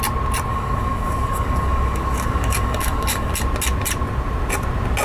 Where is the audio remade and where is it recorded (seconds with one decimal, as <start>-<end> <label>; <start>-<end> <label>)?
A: 0.0-0.5 recorded; 0.5-3.3 remade; 3.3-5.0 recorded